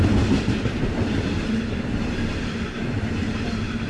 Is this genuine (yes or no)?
no